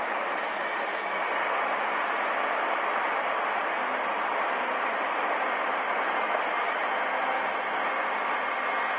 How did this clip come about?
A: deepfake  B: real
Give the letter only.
B